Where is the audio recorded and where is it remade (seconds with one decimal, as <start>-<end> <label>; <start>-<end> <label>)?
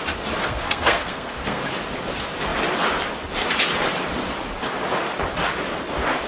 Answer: 0.0-0.4 recorded; 0.4-1.6 remade; 1.6-6.3 recorded